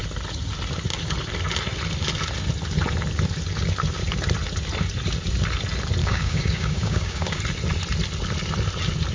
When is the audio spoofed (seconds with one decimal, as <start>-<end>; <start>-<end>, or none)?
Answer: 6.0-7.4